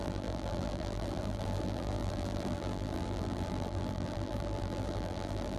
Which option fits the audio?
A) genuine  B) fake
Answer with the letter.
B